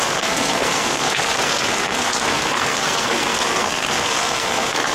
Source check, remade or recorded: remade